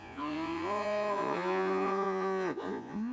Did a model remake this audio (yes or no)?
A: yes